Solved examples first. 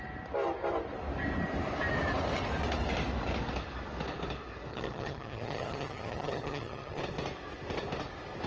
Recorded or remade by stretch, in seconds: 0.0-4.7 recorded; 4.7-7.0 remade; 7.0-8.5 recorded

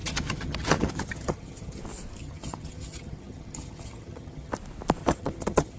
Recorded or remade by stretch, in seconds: 0.0-1.8 remade; 1.8-2.2 recorded; 2.2-4.5 remade; 4.5-5.0 recorded; 5.0-5.8 remade

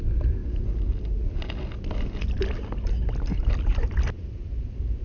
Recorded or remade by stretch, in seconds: 0.0-5.0 recorded